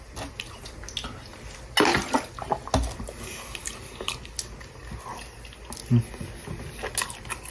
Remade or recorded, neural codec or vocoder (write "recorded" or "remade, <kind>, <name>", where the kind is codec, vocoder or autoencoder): recorded